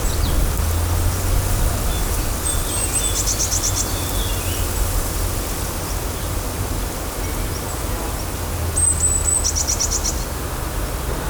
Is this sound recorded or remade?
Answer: recorded